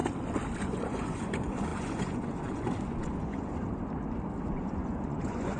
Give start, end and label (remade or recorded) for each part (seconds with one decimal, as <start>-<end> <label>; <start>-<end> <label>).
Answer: 0.0-0.6 recorded; 0.6-3.6 remade; 3.6-4.5 recorded; 4.5-5.6 remade